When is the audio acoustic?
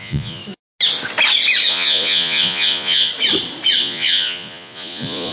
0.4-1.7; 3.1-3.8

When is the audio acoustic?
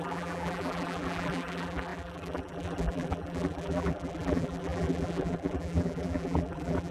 none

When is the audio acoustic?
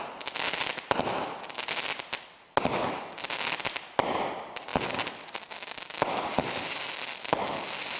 0.0-8.0